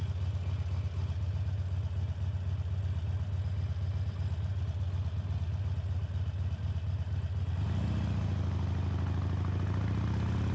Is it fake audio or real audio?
real